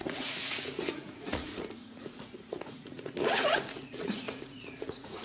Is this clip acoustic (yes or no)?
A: no